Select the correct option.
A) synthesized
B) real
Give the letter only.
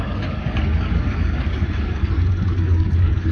A